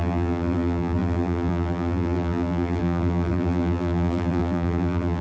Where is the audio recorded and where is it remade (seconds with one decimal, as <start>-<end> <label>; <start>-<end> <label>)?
0.0-5.2 remade